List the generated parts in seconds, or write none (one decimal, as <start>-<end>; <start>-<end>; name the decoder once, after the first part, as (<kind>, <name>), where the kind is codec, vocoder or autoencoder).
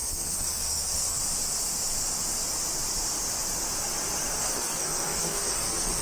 0.0-1.2 (codec, SNAC); 4.4-6.0